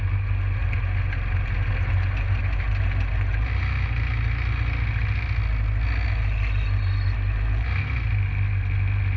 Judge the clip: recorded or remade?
recorded